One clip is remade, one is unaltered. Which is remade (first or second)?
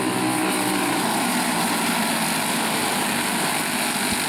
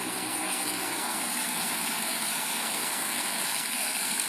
second